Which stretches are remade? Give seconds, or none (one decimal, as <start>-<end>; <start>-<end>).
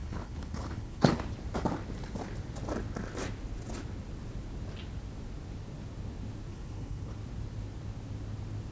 0.0-1.1; 6.5-7.2